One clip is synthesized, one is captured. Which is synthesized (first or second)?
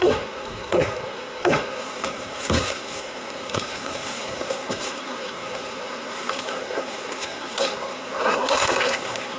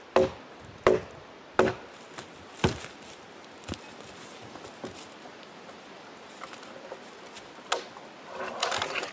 first